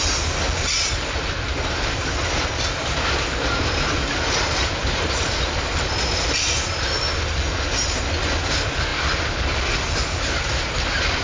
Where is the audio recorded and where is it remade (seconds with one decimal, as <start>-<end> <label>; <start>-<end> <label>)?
0.0-4.8 recorded; 4.8-5.7 remade; 5.7-11.2 recorded